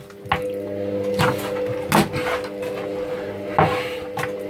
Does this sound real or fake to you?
real